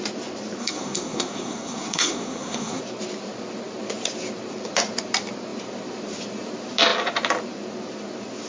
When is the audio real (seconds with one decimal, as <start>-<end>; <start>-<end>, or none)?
0.0-0.6; 2.8-8.5